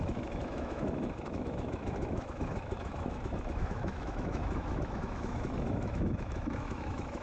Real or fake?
fake